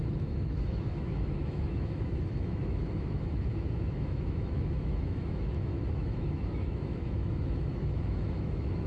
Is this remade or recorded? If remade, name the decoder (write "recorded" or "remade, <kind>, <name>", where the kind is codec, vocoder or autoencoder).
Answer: remade, autoencoder, DAC-VAE